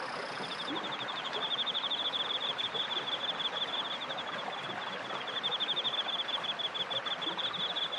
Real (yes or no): yes